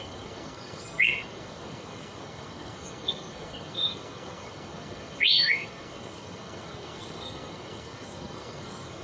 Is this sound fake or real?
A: fake